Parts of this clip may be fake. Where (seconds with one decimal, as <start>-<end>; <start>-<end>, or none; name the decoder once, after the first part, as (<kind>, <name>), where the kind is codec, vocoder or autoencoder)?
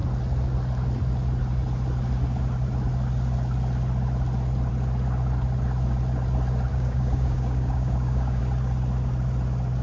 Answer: 6.7-8.4 (codec, DAC)